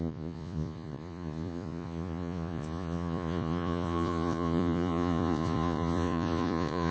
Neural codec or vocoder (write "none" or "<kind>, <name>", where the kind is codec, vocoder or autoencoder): vocoder, Vocos